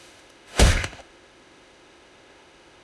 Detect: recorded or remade remade